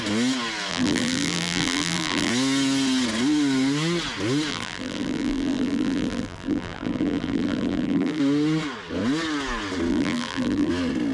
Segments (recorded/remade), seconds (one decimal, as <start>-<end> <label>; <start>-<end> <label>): 0.0-0.7 recorded; 0.7-2.3 remade; 2.3-4.5 recorded; 4.5-8.2 remade; 8.2-9.9 recorded; 9.9-10.7 remade; 10.7-11.1 recorded